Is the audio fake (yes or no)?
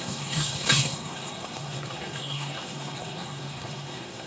yes